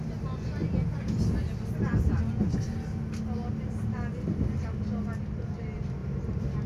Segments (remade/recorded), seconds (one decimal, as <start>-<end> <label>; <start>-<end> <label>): 0.0-6.7 recorded